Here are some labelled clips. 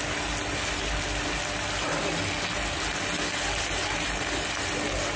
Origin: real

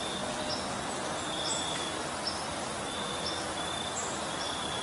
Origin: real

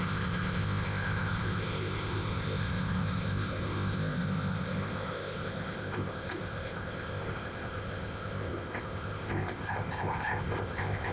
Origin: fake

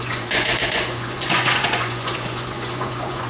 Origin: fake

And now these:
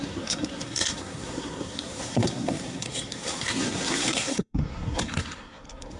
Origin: fake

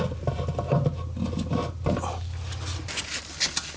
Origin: real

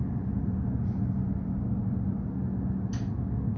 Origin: real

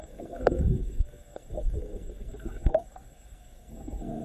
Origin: fake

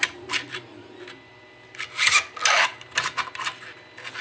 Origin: real